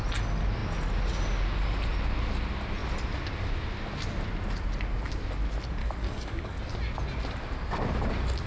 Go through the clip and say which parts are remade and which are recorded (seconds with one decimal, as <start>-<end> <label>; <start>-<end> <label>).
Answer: 0.0-5.8 recorded; 5.8-6.6 remade; 6.6-8.5 recorded